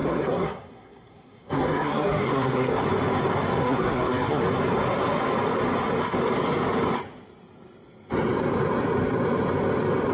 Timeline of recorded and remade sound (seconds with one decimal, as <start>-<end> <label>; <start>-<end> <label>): 0.0-2.7 remade; 2.7-3.6 recorded; 3.6-4.4 remade; 4.4-10.1 recorded